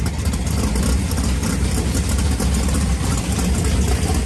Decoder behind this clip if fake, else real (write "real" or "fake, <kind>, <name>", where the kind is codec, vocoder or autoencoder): real